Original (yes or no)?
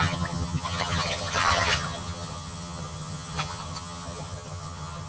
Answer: no